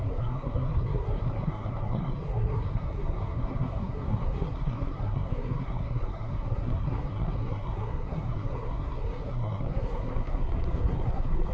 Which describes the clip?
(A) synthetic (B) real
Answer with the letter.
A